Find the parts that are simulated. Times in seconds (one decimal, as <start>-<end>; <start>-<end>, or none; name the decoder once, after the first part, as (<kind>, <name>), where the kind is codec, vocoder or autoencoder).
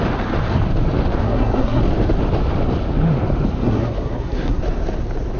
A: 1.2-1.8 (codec, SNAC); 3.6-4.6